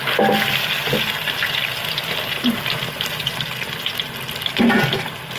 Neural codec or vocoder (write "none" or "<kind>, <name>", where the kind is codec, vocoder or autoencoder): none